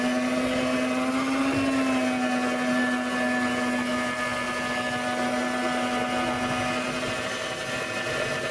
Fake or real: real